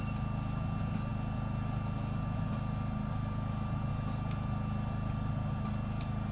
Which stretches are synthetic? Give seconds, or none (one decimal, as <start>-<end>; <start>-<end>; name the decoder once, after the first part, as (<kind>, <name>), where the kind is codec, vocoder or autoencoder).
none